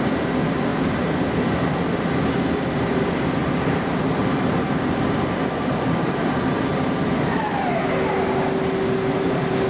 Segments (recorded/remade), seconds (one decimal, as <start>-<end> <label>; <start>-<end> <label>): 0.0-0.7 recorded; 0.7-1.3 remade; 1.3-3.4 recorded; 3.4-7.8 remade; 7.8-9.7 recorded